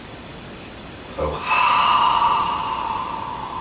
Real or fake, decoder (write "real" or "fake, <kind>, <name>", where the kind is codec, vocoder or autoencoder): real